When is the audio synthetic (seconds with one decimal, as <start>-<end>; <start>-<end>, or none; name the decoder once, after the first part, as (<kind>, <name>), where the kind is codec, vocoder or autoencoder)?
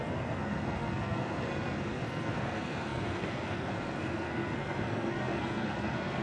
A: 0.0-6.2 (codec, SNAC)